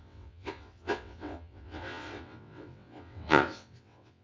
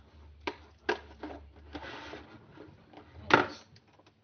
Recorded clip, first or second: second